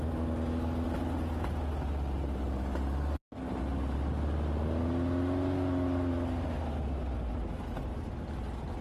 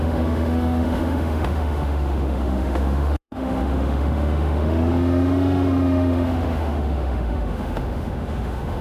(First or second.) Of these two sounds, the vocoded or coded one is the second